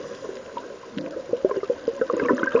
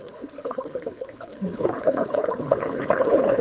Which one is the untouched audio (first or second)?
first